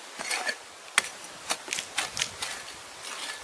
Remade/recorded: recorded